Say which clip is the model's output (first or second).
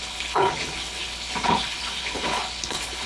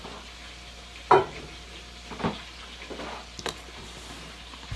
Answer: first